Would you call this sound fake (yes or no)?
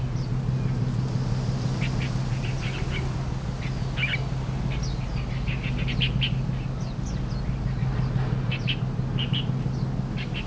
no